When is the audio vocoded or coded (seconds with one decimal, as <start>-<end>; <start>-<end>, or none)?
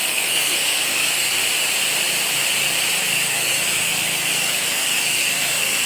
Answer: 0.0-1.4; 3.0-5.9